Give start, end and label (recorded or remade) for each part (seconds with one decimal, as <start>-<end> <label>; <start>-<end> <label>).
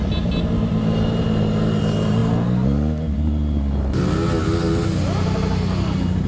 0.0-6.3 recorded